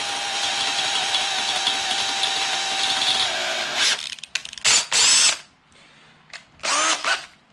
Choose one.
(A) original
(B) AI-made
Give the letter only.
A